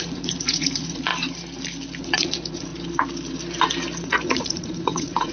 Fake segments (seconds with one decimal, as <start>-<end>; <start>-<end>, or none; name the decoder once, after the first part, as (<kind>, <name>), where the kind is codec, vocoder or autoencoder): 0.0-1.1 (vocoder, Vocos); 2.0-2.7; 4.1-5.3